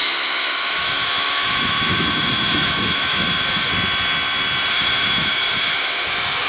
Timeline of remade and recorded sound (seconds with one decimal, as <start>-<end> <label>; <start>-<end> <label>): 0.0-3.7 remade; 3.7-4.7 recorded; 4.7-6.5 remade